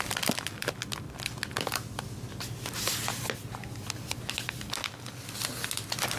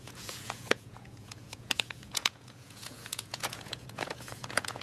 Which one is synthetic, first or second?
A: second